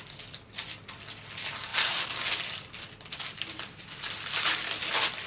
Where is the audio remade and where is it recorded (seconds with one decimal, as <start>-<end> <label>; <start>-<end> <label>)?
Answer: 0.0-5.3 recorded